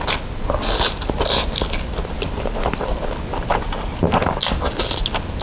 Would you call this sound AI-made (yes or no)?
no